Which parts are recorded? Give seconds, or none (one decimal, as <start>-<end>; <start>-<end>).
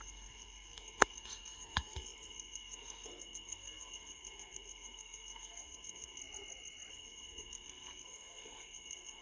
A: 6.2-6.9